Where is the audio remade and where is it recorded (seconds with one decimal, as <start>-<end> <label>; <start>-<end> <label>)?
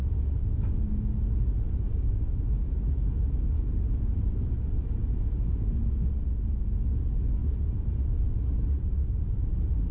0.0-7.4 recorded; 7.4-9.9 remade